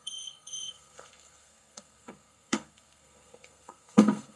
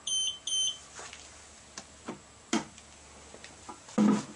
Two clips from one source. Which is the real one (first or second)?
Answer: second